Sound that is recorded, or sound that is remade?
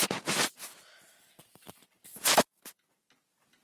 recorded